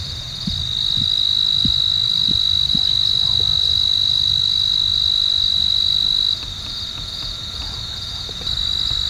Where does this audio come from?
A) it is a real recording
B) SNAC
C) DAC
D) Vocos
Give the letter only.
A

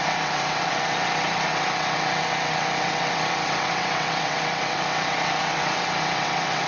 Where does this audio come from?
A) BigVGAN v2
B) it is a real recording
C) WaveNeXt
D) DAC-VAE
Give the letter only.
C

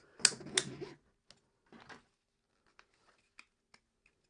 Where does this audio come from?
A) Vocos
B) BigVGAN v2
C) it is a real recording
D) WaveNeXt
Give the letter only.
C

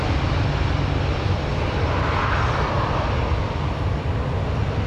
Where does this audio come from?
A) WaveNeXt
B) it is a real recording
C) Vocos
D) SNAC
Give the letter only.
B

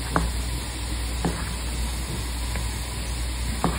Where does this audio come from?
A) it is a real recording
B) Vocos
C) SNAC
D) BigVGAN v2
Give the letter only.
A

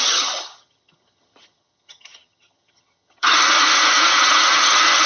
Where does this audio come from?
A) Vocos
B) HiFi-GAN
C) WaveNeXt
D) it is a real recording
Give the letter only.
B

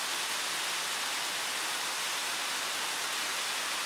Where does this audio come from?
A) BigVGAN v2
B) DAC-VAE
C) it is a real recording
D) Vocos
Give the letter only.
C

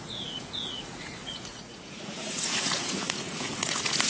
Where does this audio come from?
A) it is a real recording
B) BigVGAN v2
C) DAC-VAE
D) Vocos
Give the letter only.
D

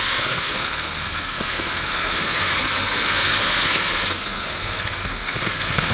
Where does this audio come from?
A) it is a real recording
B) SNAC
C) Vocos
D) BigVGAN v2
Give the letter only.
B